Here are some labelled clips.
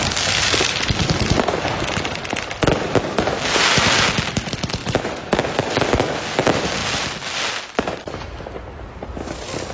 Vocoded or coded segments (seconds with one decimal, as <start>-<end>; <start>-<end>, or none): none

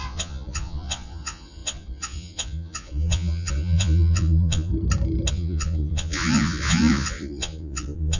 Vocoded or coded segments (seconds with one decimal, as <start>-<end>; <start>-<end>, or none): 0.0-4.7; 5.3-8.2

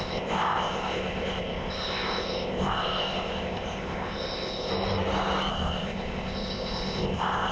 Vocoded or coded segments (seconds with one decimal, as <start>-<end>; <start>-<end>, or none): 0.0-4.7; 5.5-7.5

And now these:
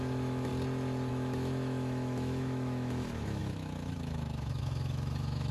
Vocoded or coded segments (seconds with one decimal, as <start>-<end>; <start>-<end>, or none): 0.0-0.5; 1.1-5.5